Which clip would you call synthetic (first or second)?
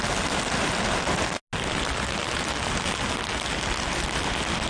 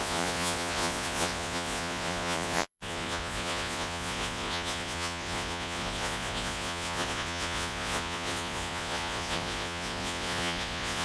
second